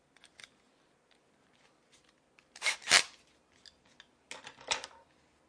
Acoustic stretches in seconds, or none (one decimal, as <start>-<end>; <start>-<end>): 0.0-5.5